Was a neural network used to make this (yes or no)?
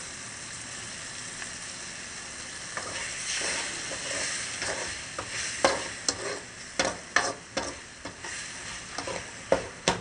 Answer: no